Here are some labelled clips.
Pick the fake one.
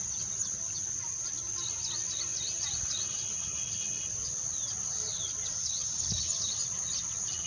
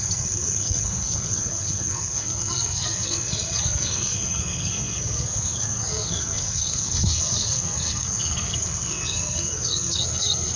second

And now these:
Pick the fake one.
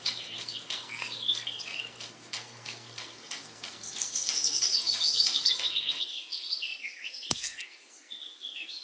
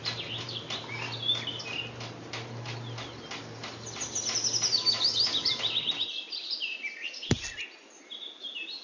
first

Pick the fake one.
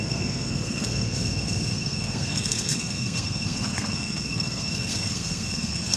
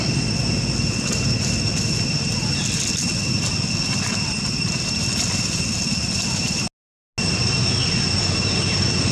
first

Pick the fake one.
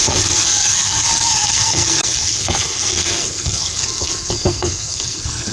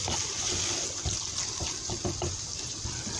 first